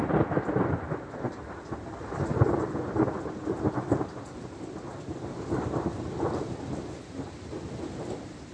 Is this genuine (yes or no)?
yes